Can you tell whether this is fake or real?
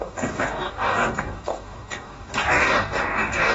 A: fake